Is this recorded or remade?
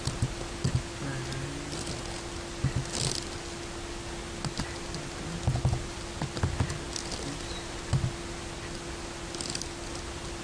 recorded